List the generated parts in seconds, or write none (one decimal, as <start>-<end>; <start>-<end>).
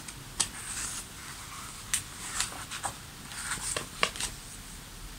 none